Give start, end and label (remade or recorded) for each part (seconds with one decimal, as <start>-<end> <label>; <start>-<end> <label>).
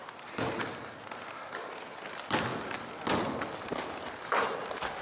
0.0-5.0 recorded